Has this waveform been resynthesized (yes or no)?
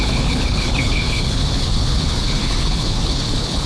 yes